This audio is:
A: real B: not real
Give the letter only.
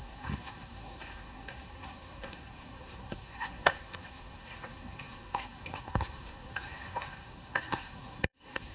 B